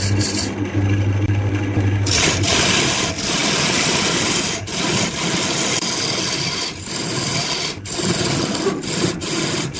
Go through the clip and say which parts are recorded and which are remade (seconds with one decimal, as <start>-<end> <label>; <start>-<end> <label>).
0.0-9.8 recorded